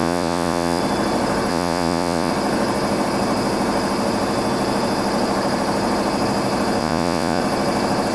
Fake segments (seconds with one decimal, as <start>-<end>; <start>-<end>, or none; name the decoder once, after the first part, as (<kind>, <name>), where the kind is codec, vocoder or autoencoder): 0.0-0.8 (vocoder, Vocos); 1.5-2.3; 6.8-7.4